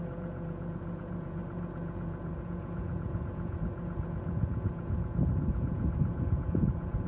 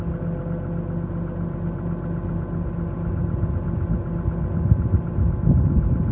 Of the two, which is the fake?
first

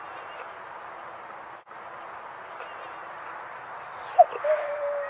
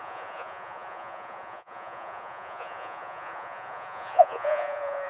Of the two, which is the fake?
second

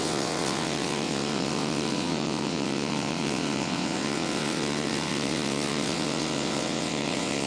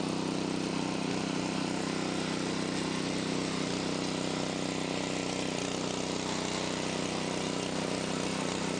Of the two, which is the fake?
first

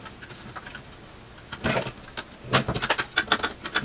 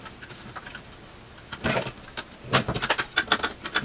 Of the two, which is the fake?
second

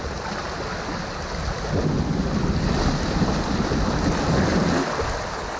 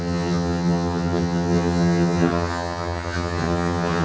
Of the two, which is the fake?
second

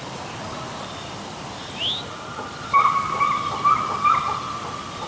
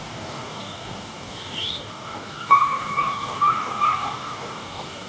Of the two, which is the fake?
second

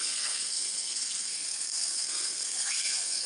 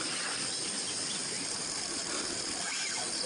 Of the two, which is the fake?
first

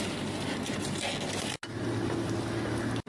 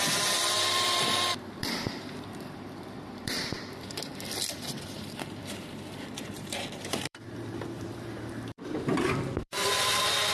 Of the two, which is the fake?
second